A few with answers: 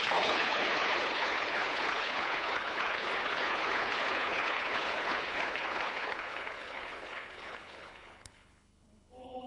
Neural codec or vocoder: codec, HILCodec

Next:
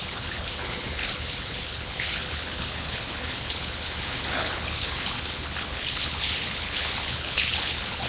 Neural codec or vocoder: codec, HILCodec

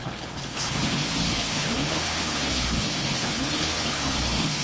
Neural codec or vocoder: codec, HILCodec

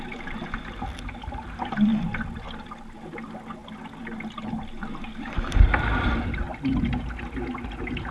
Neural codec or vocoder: none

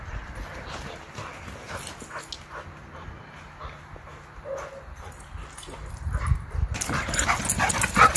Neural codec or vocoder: none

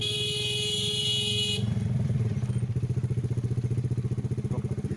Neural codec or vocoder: none